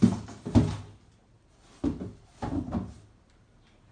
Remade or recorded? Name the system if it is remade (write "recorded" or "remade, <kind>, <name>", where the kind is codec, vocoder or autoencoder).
recorded